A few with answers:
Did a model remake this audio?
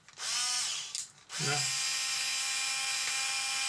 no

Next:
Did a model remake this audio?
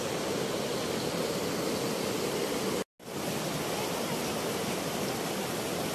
no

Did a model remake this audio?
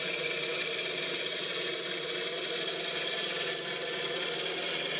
no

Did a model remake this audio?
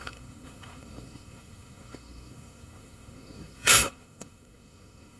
yes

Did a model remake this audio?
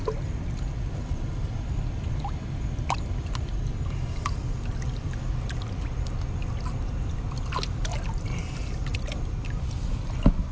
no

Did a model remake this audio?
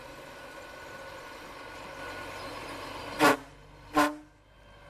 no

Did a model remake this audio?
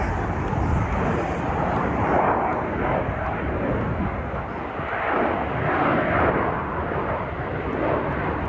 no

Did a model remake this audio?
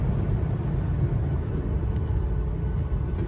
no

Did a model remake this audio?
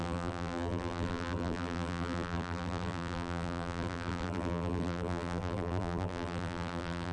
yes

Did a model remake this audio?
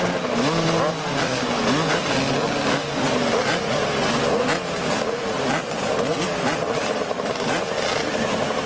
no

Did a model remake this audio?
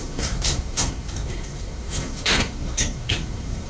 yes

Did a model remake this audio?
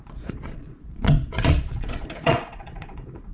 yes